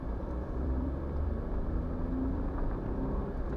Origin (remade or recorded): remade